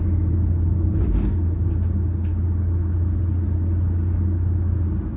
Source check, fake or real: real